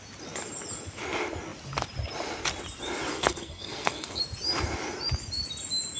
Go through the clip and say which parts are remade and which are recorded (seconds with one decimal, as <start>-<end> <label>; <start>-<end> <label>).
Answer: 0.0-3.1 recorded; 3.1-4.2 remade; 4.2-6.0 recorded